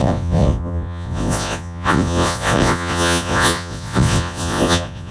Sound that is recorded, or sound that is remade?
remade